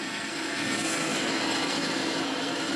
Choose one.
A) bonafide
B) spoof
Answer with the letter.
B